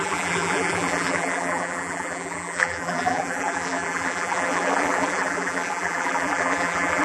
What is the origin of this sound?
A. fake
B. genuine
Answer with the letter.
A